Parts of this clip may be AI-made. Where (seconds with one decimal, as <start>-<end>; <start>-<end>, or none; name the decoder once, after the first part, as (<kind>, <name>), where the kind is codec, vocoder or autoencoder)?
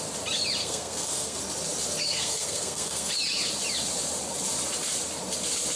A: 0.6-1.4 (codec, SNAC); 2.1-3.1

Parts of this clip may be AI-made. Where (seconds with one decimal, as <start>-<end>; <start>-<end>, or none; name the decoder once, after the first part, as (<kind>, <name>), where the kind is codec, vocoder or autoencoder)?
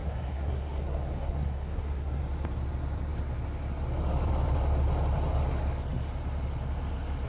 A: 0.0-2.2 (codec, SNAC)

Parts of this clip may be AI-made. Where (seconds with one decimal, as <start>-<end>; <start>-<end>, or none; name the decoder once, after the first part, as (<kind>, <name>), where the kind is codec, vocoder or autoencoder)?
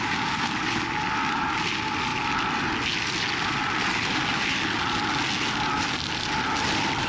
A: none